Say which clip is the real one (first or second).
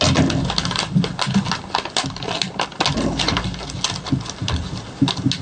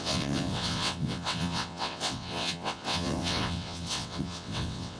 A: first